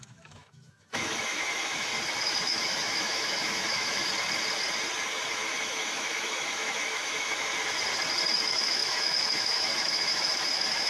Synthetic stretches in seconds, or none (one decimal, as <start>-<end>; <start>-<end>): 0.0-1.9; 2.4-4.0; 5.3-7.5; 8.4-10.9